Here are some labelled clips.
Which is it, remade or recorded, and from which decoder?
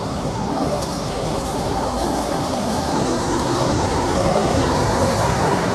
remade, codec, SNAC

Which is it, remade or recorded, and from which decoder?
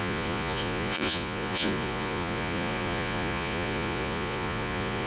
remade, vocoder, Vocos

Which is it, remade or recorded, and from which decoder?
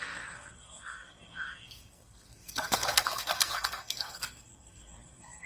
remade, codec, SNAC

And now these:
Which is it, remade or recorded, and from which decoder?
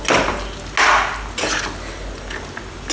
recorded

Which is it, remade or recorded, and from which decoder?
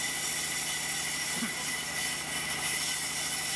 remade, vocoder, BigVGAN v2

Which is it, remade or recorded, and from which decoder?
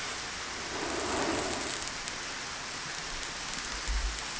recorded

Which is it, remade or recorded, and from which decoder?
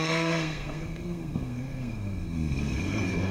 remade, codec, SNAC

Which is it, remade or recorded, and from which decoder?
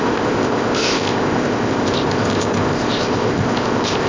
remade, codec, ZipCodec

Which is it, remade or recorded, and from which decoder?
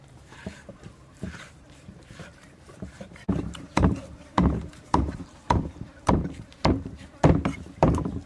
remade, vocoder, BigVGAN v2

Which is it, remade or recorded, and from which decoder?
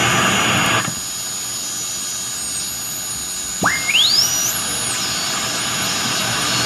recorded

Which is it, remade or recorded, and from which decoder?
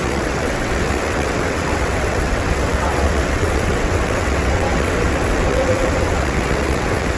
remade, vocoder, WaveNeXt